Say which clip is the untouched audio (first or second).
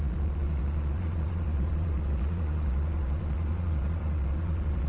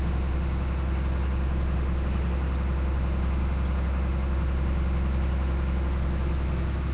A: second